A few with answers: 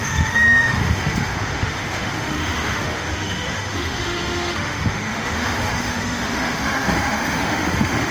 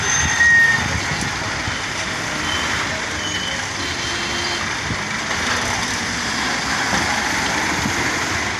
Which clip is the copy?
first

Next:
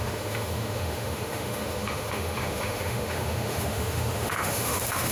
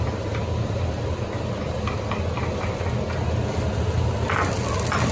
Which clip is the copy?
first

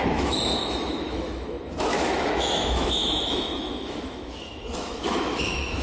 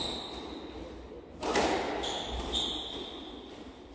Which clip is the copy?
first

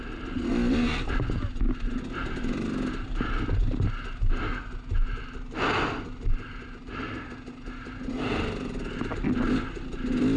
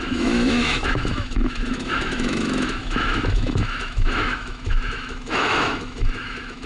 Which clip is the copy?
second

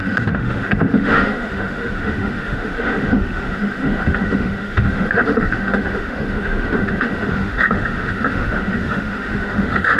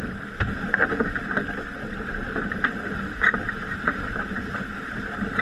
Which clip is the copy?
first